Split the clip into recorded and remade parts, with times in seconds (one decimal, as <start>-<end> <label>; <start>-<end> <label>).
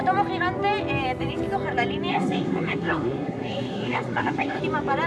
0.0-2.1 recorded; 2.1-4.6 remade; 4.6-5.1 recorded